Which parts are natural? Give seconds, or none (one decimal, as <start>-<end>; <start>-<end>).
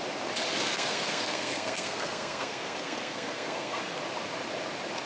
0.0-0.7; 3.8-5.1